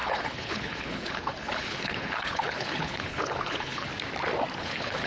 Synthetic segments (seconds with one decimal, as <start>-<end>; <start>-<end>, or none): 0.0-3.9; 4.6-5.1